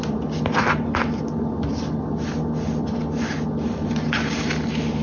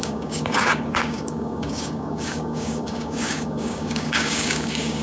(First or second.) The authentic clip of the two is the first